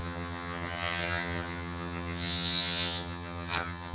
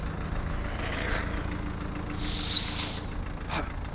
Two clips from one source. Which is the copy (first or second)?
first